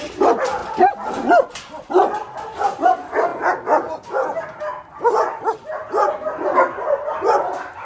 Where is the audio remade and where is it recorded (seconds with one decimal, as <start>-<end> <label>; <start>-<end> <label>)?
0.0-7.8 recorded